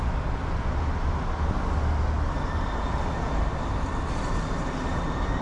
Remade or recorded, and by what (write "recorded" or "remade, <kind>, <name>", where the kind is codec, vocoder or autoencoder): recorded